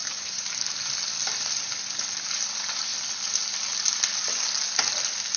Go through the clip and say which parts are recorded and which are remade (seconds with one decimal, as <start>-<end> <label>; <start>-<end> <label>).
0.0-0.6 remade; 0.6-5.4 recorded

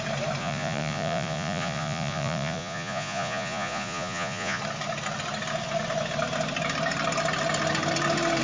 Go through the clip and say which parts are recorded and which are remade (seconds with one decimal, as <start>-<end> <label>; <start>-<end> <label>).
0.0-0.4 recorded; 0.4-4.6 remade; 4.6-8.4 recorded

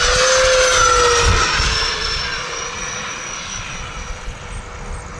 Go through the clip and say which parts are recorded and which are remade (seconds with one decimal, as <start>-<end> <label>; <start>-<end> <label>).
0.0-1.3 recorded; 1.3-4.4 remade; 4.4-5.2 recorded

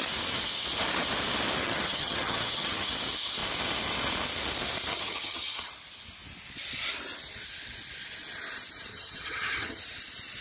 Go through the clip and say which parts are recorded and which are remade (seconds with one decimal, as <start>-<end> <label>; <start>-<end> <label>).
0.0-1.6 recorded; 1.6-2.9 remade; 2.9-4.9 recorded; 4.9-5.7 remade; 5.7-8.9 recorded; 8.9-9.8 remade; 9.8-10.4 recorded

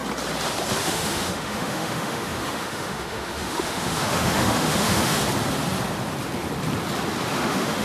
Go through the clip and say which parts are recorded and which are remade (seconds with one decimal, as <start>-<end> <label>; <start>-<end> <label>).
0.0-0.8 recorded; 0.8-5.2 remade; 5.2-7.3 recorded; 7.3-7.8 remade

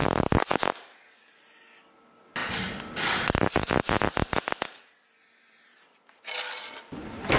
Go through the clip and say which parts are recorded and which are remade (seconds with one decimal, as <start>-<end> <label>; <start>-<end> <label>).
0.0-7.4 recorded